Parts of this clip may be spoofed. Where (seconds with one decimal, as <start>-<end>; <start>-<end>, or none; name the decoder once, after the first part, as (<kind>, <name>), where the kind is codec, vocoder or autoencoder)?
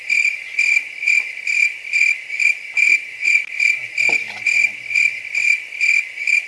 none